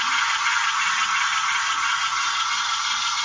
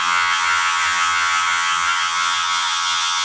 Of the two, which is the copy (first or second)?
second